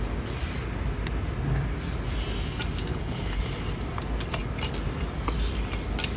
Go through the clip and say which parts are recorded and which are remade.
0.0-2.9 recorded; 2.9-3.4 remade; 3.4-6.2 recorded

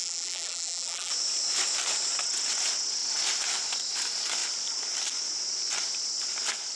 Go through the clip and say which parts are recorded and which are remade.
0.0-1.1 remade; 1.1-6.8 recorded

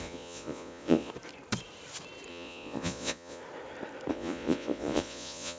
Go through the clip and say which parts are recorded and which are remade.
0.0-1.1 remade; 1.1-2.3 recorded; 2.3-3.4 remade; 3.4-4.1 recorded; 4.1-5.6 remade

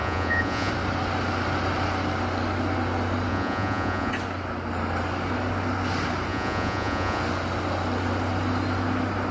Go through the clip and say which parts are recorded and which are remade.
0.0-0.7 remade; 0.7-3.3 recorded; 3.3-4.1 remade; 4.1-6.3 recorded; 6.3-7.2 remade; 7.2-9.3 recorded

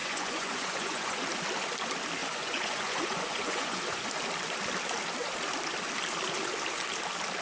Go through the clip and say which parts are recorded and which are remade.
0.0-1.2 remade; 1.2-2.2 recorded; 2.2-3.8 remade; 3.8-7.4 recorded